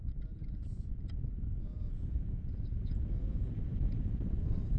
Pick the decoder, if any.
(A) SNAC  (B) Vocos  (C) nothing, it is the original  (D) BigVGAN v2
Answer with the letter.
B